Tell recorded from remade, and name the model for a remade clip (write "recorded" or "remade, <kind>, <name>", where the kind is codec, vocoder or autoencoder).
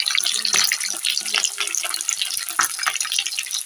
recorded